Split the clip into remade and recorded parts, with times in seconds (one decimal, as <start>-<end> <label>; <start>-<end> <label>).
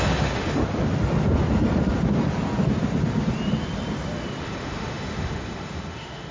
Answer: 0.0-0.6 remade; 0.6-4.4 recorded; 4.4-6.3 remade